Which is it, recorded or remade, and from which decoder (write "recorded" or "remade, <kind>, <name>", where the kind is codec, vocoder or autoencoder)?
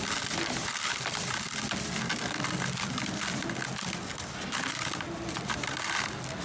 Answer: recorded